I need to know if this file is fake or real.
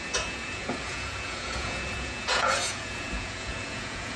fake